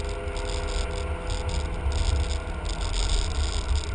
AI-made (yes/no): no